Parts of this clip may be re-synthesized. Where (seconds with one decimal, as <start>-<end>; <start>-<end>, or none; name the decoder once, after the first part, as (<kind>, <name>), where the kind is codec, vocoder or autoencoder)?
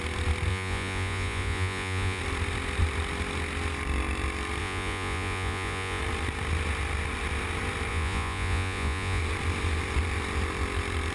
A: 0.5-2.2 (vocoder, Vocos); 4.6-6.0; 7.9-9.2